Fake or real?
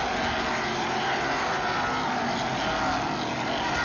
real